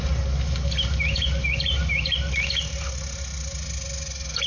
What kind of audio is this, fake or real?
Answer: real